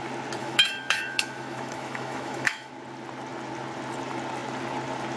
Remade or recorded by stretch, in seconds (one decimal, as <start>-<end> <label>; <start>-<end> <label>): 0.0-0.4 recorded; 0.4-2.7 remade; 2.7-5.2 recorded